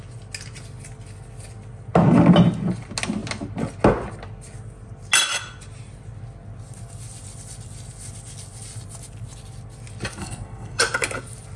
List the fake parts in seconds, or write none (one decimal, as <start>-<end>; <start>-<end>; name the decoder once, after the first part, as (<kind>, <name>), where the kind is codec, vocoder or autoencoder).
10.2-10.8 (codec, SNAC)